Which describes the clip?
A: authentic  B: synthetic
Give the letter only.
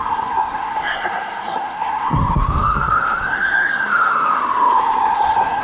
B